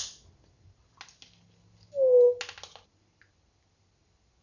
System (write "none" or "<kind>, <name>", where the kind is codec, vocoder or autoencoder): none